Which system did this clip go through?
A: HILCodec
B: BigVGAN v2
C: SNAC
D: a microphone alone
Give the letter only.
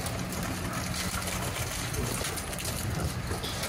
D